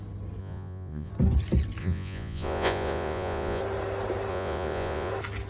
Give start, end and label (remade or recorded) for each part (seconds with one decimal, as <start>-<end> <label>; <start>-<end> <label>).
0.0-0.4 recorded; 0.4-1.1 remade; 1.1-1.8 recorded; 1.8-3.6 remade; 3.6-4.3 recorded; 4.3-5.1 remade; 5.1-5.5 recorded